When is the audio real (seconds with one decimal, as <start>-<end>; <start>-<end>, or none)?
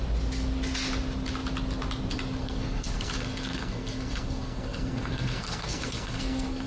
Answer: 0.0-2.4